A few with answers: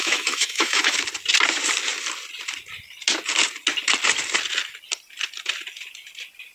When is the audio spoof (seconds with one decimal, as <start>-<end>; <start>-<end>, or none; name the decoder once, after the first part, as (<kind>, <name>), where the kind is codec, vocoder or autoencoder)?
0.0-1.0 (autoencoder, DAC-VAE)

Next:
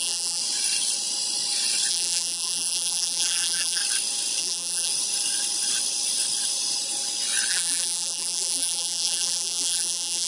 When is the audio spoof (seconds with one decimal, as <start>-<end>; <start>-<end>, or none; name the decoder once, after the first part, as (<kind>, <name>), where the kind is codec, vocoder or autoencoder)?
0.0-0.4 (vocoder, BigVGAN v2); 1.9-3.8; 4.4-4.9; 7.5-10.3

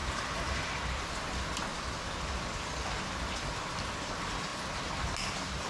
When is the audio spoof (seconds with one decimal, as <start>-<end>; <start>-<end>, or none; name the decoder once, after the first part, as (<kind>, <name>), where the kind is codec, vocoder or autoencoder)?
0.0-0.6 (vocoder, BigVGAN v2); 1.7-3.9

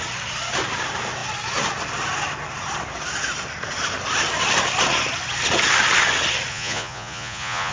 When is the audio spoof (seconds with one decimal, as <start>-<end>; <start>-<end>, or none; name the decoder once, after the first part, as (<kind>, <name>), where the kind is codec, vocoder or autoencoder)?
6.5-7.7 (vocoder, Vocos)

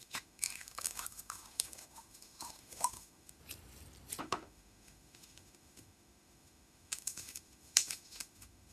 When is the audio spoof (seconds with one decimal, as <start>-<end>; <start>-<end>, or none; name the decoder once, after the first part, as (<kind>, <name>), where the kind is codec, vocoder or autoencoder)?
0.0-3.4 (autoencoder, DAC-VAE); 4.2-8.7